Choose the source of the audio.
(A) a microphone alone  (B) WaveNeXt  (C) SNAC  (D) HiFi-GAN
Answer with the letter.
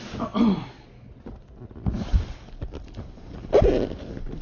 A